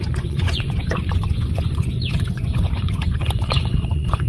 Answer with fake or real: fake